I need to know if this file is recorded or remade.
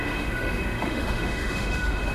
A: remade